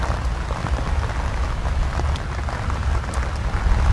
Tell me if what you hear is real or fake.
real